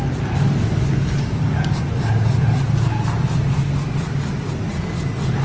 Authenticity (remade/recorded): recorded